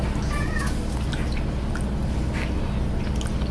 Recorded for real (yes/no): yes